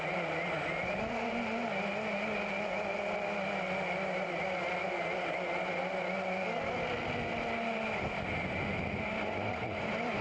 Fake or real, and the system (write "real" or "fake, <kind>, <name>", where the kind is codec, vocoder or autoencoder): real